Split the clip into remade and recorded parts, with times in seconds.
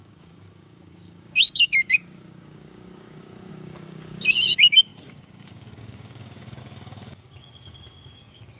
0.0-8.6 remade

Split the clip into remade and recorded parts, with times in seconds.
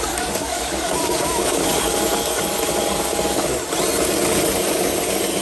0.0-3.5 remade; 3.5-4.7 recorded; 4.7-5.4 remade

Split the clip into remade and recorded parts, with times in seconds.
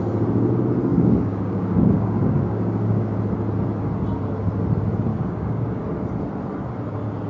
0.0-0.9 recorded; 0.9-3.2 remade; 3.2-5.1 recorded; 5.1-5.8 remade; 5.8-7.3 recorded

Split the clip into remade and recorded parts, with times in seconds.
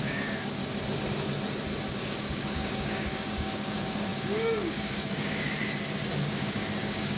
0.0-0.6 remade; 0.6-1.9 recorded; 1.9-5.6 remade; 5.6-6.2 recorded; 6.2-7.2 remade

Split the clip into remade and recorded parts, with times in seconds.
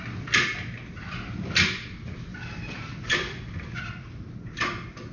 0.0-5.1 recorded